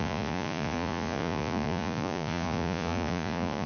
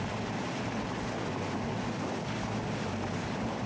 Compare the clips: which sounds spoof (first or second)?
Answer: first